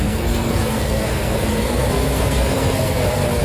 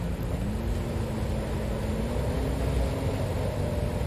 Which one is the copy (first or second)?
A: first